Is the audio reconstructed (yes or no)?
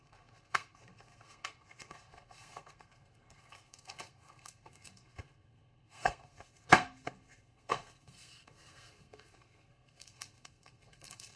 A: yes